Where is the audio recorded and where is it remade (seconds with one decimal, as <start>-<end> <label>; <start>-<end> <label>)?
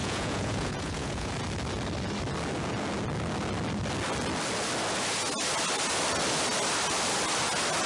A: 0.0-1.3 remade; 1.3-7.9 recorded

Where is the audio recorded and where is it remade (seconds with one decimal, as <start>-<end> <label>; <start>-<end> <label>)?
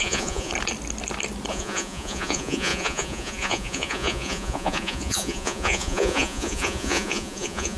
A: 0.0-0.5 remade; 0.5-1.5 recorded; 1.5-7.8 remade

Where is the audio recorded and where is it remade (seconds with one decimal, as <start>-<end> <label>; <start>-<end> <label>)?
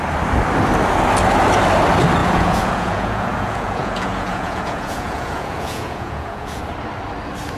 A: 0.0-2.2 recorded; 2.2-6.6 remade; 6.6-7.6 recorded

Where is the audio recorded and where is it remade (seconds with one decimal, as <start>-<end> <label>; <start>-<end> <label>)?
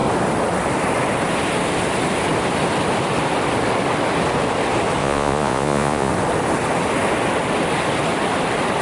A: 0.0-5.0 recorded; 5.0-6.1 remade; 6.1-8.8 recorded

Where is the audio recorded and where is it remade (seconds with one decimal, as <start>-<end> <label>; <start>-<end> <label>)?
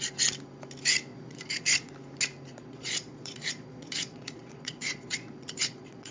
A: 0.0-1.1 recorded; 1.1-1.9 remade; 1.9-2.5 recorded; 2.5-6.1 remade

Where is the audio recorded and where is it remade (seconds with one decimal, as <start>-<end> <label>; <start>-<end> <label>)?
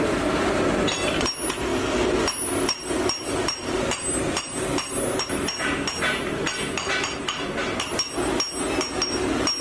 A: 0.0-9.6 recorded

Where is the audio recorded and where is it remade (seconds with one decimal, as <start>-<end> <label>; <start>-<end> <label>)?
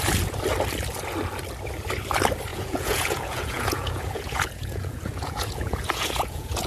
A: 0.0-2.5 recorded; 2.5-6.7 remade